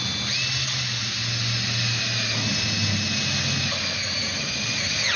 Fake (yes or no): no